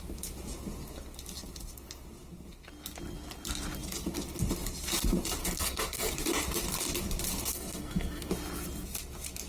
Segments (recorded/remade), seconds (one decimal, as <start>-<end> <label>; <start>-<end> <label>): 0.0-5.4 recorded; 5.4-6.1 remade; 6.1-7.5 recorded; 7.5-8.3 remade; 8.3-9.5 recorded